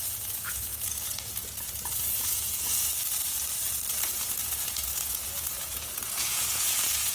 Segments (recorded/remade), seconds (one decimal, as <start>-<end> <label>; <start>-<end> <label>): 0.0-2.9 remade; 2.9-3.9 recorded; 3.9-7.1 remade